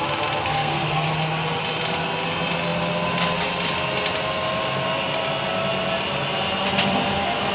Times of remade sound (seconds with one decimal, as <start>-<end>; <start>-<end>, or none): 0.4-1.1